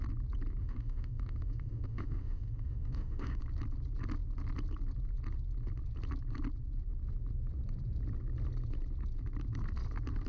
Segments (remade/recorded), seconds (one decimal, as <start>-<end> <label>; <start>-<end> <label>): 0.0-0.6 recorded; 0.6-3.4 remade; 3.4-10.3 recorded